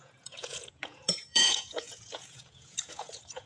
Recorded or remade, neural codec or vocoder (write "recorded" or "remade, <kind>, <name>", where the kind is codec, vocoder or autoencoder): remade, vocoder, Vocos